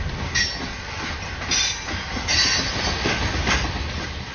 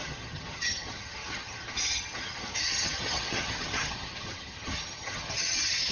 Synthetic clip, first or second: second